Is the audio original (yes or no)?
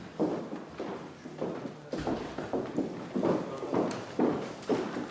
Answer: yes